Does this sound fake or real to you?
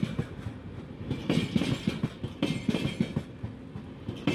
real